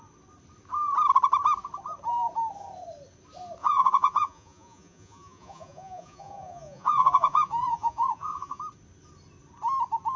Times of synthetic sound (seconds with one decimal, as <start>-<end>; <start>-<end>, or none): 3.6-8.6